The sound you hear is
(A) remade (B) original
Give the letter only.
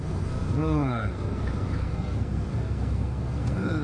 A